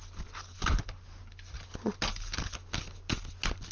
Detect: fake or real real